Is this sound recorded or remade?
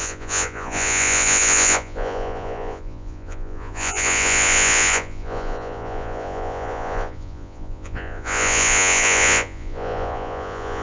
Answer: remade